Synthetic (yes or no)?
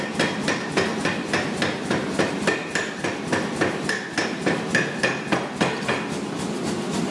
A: no